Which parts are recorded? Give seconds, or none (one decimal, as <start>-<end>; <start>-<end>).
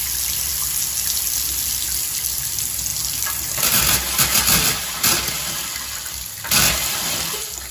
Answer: 0.0-7.7